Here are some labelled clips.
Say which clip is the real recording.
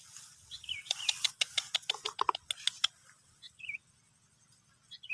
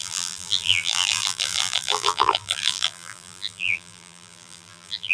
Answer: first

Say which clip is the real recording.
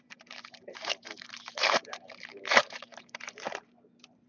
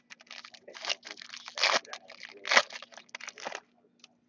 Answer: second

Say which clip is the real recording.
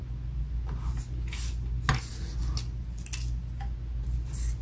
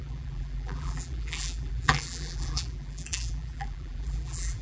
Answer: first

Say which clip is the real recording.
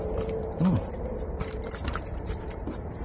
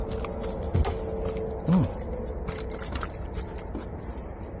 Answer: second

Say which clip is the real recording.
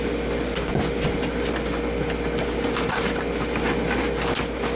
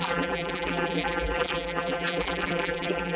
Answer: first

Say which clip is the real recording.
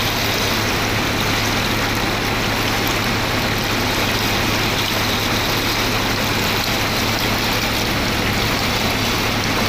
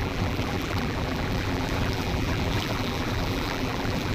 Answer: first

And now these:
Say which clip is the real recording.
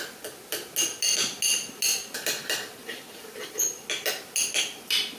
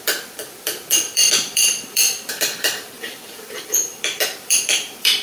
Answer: first